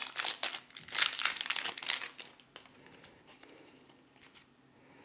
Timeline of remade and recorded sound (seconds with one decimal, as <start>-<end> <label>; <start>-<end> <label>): 0.0-5.0 recorded